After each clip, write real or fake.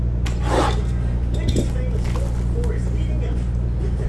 real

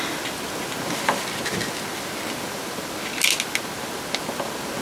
real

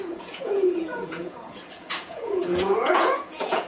fake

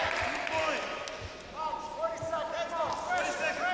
real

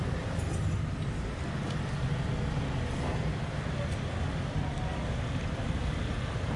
real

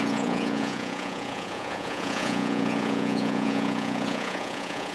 fake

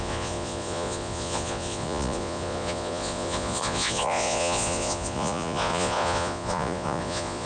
fake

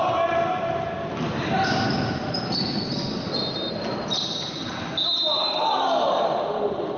real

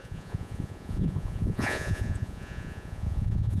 fake